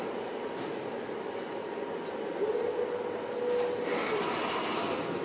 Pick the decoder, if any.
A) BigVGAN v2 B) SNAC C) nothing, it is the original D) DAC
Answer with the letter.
C